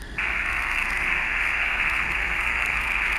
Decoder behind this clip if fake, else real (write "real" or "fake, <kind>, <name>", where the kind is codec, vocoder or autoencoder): fake, codec, SNAC